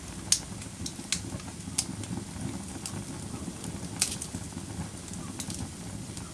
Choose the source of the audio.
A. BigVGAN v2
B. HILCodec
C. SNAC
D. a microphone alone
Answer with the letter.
D